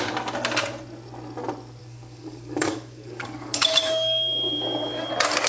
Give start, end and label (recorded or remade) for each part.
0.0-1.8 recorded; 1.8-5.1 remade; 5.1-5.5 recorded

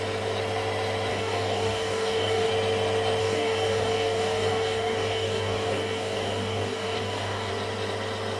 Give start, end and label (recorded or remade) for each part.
0.0-1.1 recorded; 1.1-2.5 remade; 2.5-3.2 recorded; 3.2-7.5 remade; 7.5-8.4 recorded

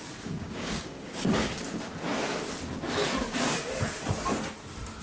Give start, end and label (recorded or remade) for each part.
0.0-0.4 recorded; 0.4-1.3 remade; 1.3-5.0 recorded

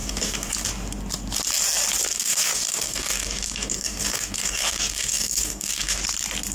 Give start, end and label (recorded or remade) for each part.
0.0-0.5 remade; 0.5-2.1 recorded; 2.1-6.0 remade; 6.0-6.5 recorded

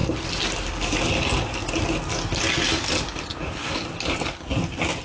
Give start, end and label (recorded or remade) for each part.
0.0-5.0 recorded

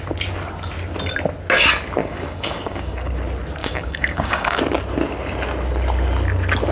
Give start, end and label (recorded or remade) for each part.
0.0-2.0 recorded; 2.0-3.1 remade; 3.1-3.6 recorded; 3.6-4.6 remade; 4.6-6.7 recorded

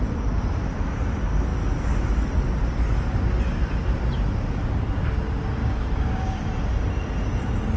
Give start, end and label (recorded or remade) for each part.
0.0-5.6 recorded; 5.6-6.4 remade; 6.4-7.8 recorded

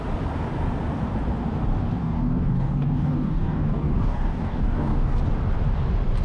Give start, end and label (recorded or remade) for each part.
0.0-2.0 recorded; 2.0-5.2 remade; 5.2-6.2 recorded